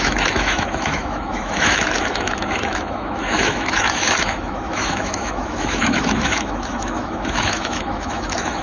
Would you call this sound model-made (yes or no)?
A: yes